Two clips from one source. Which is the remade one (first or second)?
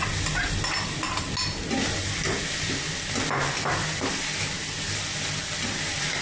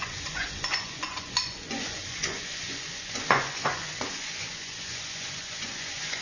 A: second